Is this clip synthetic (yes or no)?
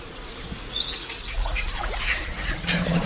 yes